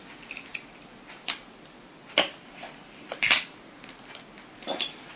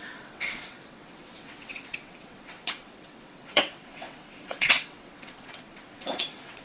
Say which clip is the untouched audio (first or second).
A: first